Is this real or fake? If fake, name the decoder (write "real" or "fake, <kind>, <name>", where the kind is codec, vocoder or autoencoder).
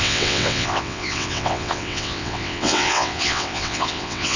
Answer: fake, vocoder, WaveNeXt